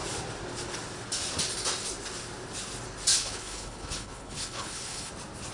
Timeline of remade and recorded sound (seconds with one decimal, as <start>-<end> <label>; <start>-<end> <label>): 0.0-3.1 recorded; 3.1-5.1 remade; 5.1-5.5 recorded

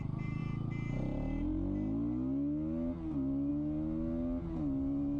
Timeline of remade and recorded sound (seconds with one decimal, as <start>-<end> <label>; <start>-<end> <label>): 0.0-5.2 recorded

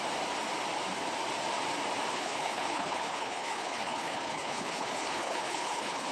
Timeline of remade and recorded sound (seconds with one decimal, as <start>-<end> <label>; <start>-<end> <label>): 0.0-2.1 recorded; 2.1-6.1 remade

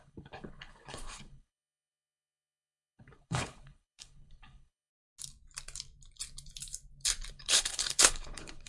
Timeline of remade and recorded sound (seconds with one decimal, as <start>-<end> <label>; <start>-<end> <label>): 0.0-4.9 remade; 4.9-7.3 recorded; 7.3-8.7 remade

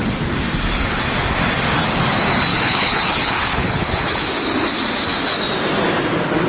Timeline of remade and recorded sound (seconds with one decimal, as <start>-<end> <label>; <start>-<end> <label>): 0.0-2.5 recorded; 2.5-4.3 remade; 4.3-6.5 recorded

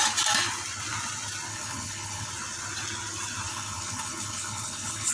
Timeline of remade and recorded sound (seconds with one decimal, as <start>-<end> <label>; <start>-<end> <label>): 0.0-1.5 recorded; 1.5-2.3 remade; 2.3-3.5 recorded; 3.5-5.1 remade

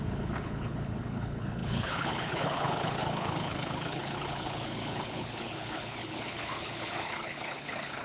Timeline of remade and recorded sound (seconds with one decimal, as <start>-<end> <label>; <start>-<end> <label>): 0.0-8.0 remade